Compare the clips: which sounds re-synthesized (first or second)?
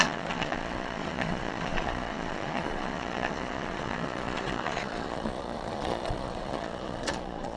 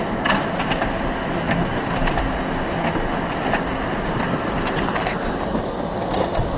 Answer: first